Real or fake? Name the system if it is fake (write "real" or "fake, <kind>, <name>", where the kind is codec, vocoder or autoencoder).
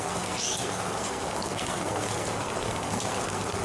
fake, codec, SNAC